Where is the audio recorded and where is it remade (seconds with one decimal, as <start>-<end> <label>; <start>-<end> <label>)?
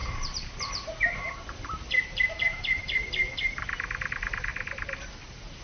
0.0-4.5 remade; 4.5-5.6 recorded